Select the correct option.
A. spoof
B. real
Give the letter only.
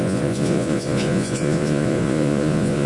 A